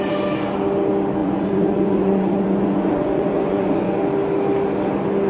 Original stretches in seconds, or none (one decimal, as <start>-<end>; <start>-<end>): 0.0-1.2; 4.0-5.3